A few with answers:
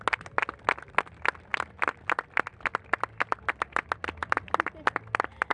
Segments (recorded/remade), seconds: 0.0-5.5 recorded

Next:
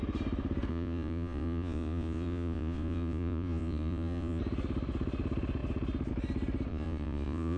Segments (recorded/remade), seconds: 0.0-0.7 recorded; 0.7-4.4 remade; 4.4-6.7 recorded; 6.7-7.6 remade

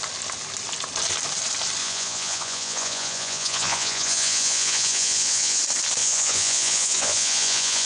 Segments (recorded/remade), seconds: 0.0-1.8 recorded; 1.8-5.6 remade; 5.6-6.0 recorded; 6.0-7.9 remade

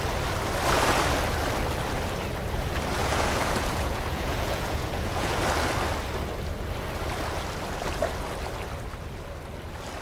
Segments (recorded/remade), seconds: 0.0-3.0 recorded; 3.0-5.4 remade; 5.4-10.0 recorded

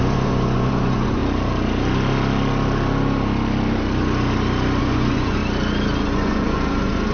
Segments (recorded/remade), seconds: 0.0-1.2 remade; 1.2-4.8 recorded; 4.8-5.4 remade; 5.4-6.0 recorded; 6.0-7.1 remade